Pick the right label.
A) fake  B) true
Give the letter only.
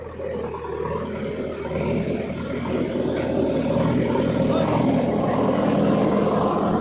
B